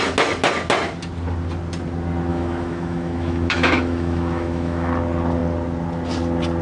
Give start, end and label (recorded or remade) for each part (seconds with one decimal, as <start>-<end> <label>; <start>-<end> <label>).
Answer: 0.0-2.3 recorded; 2.3-4.9 remade; 4.9-6.6 recorded